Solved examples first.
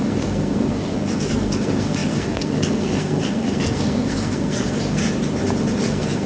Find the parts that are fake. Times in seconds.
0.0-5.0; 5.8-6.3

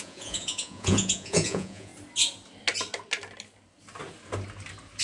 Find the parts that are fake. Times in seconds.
0.0-1.9

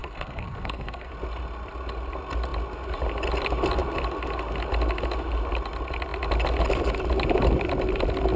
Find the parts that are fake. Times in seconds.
0.0-1.1

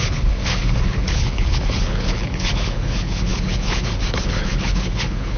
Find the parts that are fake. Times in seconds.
0.0-5.4

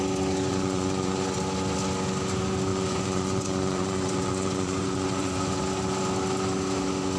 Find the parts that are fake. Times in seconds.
0.5-1.4; 2.7-5.6

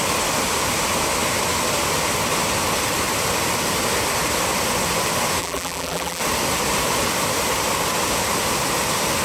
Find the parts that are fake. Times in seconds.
5.4-6.2

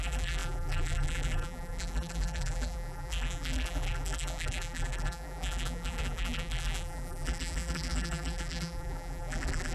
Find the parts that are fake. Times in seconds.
0.0-9.7

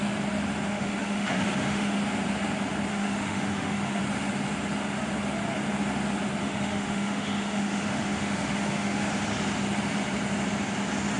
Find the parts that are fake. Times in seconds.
0.7-2.0; 2.9-4.0; 6.4-9.1